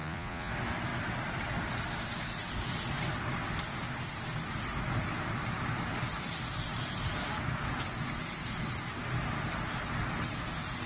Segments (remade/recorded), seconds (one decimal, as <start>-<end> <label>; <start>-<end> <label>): 0.0-0.5 remade; 0.5-10.9 recorded